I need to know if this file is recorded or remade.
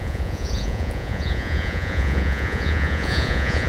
remade